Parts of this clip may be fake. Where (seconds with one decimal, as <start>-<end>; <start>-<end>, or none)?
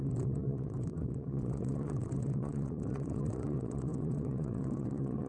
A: 0.0-5.3